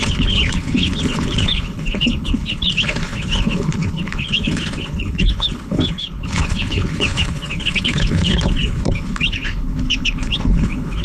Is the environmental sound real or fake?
fake